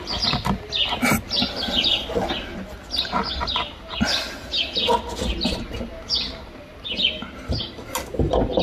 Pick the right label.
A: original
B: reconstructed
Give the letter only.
A